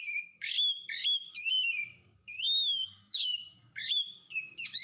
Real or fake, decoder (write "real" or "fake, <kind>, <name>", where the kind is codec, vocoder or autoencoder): fake, codec, DAC